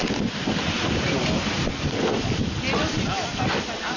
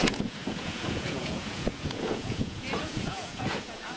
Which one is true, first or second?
first